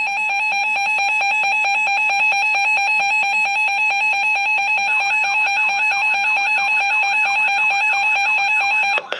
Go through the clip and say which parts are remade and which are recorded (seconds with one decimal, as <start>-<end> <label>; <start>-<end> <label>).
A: 0.0-9.2 remade

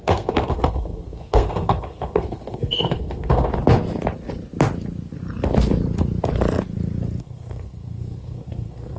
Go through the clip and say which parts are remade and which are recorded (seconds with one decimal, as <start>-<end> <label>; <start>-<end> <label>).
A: 0.0-3.5 remade; 3.5-7.2 recorded; 7.2-9.0 remade

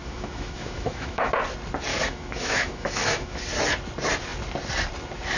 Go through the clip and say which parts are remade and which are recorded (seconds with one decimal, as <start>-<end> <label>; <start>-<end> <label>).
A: 0.0-1.3 remade; 1.3-1.9 recorded; 1.9-3.4 remade; 3.4-5.4 recorded